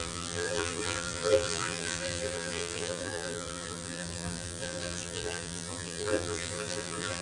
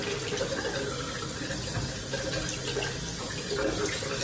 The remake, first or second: first